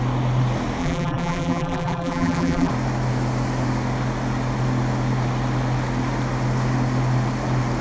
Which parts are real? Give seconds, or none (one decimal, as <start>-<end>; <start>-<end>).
0.0-0.8; 2.7-7.8